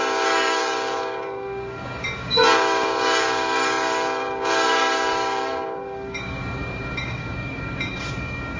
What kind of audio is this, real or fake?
fake